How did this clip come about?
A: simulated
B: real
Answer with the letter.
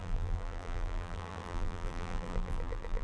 A